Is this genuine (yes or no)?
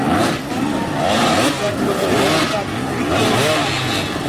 yes